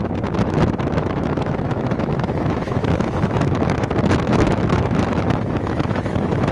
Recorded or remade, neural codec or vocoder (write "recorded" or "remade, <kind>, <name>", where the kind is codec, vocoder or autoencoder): remade, autoencoder, DAC-VAE